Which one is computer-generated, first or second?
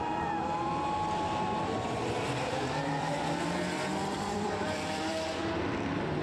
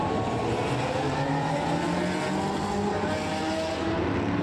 first